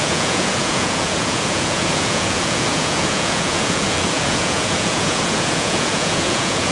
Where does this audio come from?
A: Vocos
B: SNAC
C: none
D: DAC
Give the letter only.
A